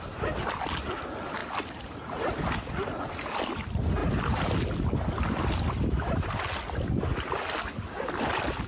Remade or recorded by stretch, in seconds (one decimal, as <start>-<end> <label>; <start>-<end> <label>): 0.0-8.7 recorded